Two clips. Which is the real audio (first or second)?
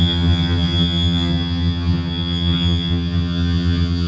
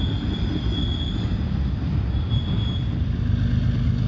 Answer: second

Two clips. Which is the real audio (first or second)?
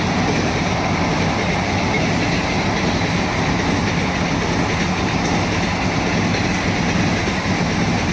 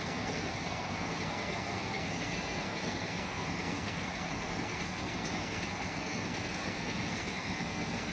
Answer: first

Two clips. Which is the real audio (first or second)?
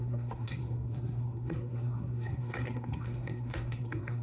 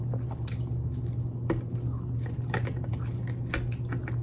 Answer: second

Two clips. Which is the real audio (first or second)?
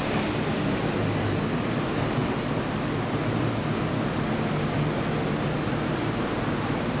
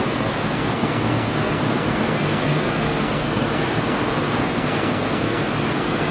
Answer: first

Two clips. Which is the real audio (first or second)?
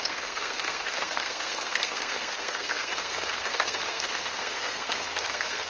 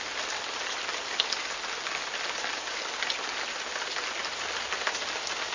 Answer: second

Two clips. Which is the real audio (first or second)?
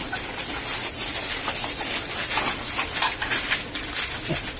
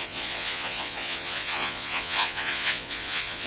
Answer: first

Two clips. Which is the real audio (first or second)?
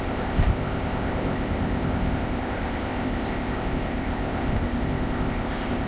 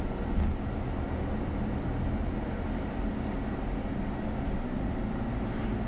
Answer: second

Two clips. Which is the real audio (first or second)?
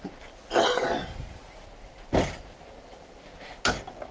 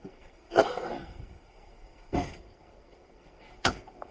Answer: first